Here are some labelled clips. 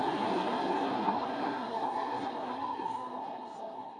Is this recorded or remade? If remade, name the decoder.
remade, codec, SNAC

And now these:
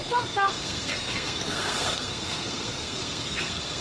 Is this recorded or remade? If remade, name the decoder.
remade, codec, SNAC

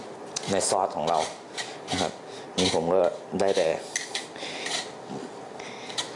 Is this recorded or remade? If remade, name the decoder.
recorded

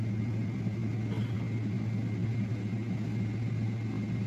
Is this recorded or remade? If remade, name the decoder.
recorded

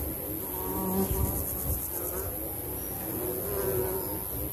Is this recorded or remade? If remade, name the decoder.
recorded